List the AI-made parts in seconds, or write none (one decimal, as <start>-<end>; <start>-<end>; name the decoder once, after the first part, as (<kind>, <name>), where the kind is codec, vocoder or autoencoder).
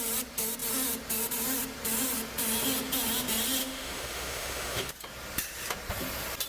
3.6-4.9 (autoencoder, DAC-VAE)